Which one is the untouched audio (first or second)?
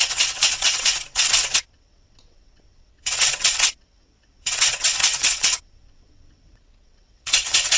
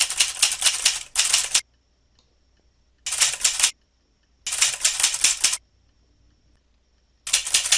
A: second